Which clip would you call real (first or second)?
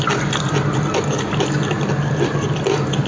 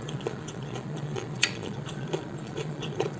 first